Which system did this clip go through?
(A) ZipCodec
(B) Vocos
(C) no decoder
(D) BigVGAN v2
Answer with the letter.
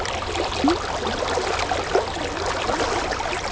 C